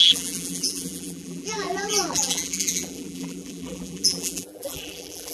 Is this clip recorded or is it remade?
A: remade